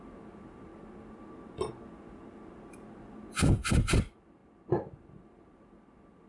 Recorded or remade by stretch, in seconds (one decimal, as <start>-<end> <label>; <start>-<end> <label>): 0.0-0.7 remade; 0.7-4.0 recorded; 4.0-6.3 remade